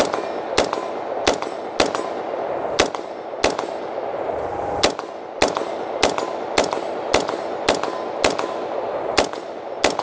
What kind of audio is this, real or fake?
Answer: real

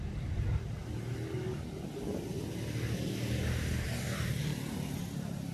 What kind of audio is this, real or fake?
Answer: real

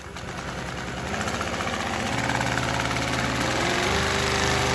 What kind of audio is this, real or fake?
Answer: real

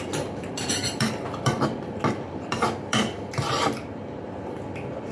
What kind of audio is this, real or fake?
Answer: fake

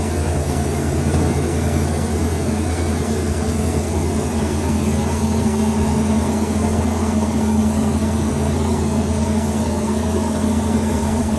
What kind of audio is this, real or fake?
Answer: fake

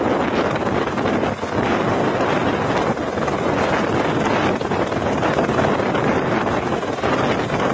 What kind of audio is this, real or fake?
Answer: real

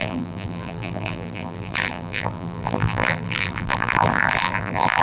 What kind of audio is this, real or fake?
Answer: fake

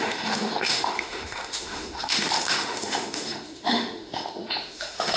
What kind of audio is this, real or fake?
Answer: fake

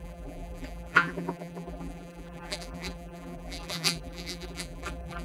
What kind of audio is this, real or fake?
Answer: fake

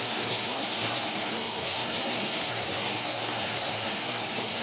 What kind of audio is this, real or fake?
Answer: fake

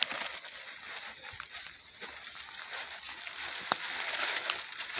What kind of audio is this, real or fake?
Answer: real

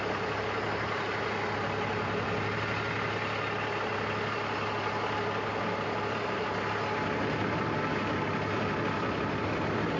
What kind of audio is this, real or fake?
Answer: real